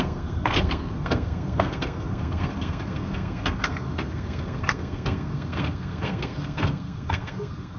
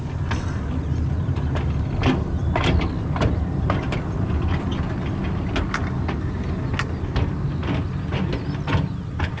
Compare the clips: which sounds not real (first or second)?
first